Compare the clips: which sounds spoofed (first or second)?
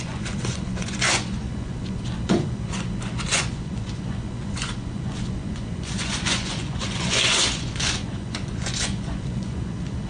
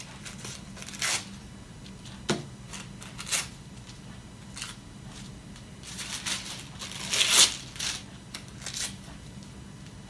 first